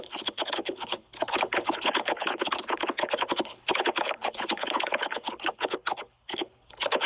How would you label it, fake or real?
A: fake